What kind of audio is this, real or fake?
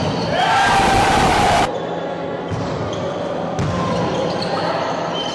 real